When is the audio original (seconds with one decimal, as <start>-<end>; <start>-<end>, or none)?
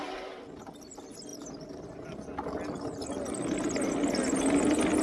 0.0-5.0